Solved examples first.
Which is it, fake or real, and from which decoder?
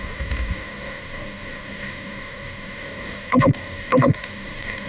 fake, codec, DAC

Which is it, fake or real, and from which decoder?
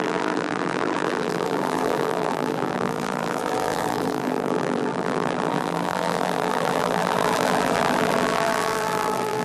fake, vocoder, BigVGAN v2